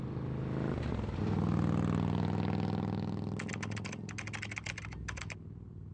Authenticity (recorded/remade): recorded